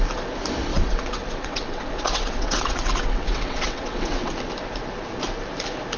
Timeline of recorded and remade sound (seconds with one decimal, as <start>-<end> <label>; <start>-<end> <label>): 0.0-0.7 recorded; 0.7-4.3 remade; 4.3-6.0 recorded